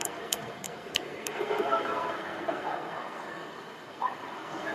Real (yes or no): no